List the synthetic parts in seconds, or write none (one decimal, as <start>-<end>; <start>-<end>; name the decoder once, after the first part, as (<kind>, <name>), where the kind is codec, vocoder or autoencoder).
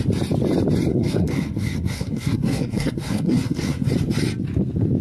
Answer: 0.9-3.9 (codec, SNAC)